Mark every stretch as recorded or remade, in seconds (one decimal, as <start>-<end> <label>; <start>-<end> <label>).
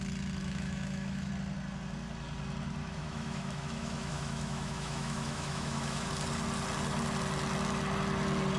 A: 0.0-0.4 recorded; 0.4-1.3 remade; 1.3-2.8 recorded; 2.8-6.1 remade; 6.1-8.6 recorded